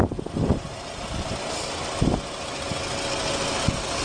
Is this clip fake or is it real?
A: real